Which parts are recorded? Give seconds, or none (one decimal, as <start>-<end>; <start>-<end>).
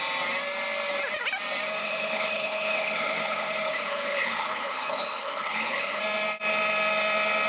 0.0-1.8; 6.0-7.5